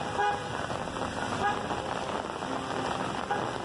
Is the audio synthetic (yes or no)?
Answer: no